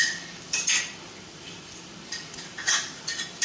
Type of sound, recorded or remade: remade